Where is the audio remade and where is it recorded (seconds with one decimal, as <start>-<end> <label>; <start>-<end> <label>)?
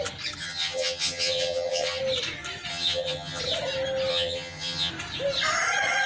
0.0-0.4 recorded; 0.4-2.0 remade; 2.0-2.7 recorded; 2.7-3.4 remade; 3.4-4.1 recorded; 4.1-4.9 remade; 4.9-6.1 recorded